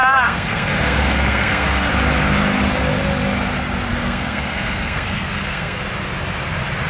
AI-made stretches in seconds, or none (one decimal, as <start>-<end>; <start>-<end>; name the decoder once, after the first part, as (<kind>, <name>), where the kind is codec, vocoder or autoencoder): 0.0-1.9 (codec, SNAC); 3.9-5.8